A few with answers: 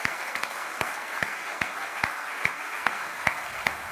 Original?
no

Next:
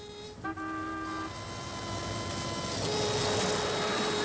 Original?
yes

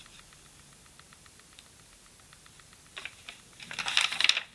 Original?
yes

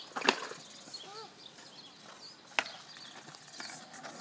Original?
yes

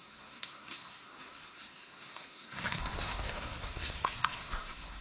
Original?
no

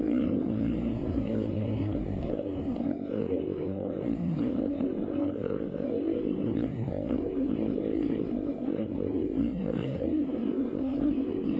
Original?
no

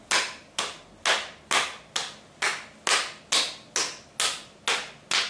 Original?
yes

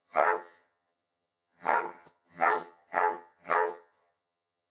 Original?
no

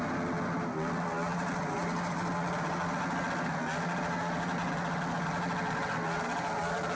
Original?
yes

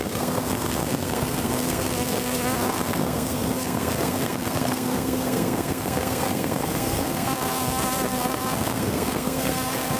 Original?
no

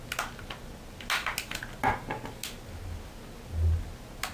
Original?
yes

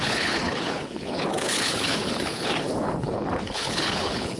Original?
no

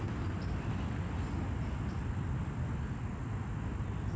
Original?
yes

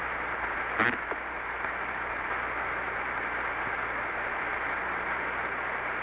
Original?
no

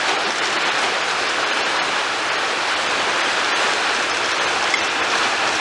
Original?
yes